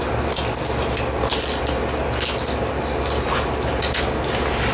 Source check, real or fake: real